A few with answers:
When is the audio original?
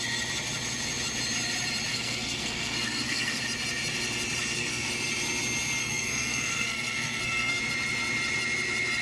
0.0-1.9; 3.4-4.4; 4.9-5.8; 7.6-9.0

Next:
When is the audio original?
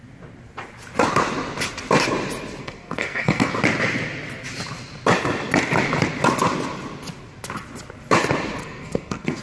0.0-2.6; 3.5-8.6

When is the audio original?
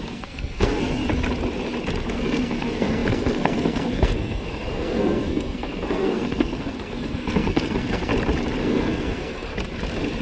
1.0-2.1; 8.1-8.6; 9.5-10.2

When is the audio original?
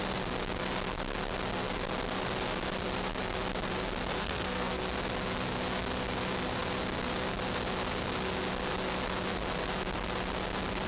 0.0-4.2; 4.8-10.9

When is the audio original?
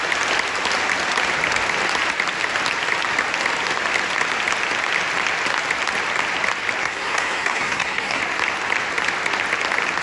0.0-6.8; 8.2-10.0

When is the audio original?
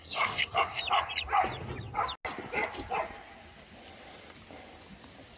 0.8-5.4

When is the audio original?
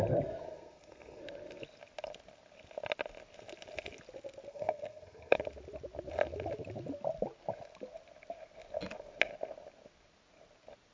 0.0-0.4; 1.2-4.5; 5.4-10.9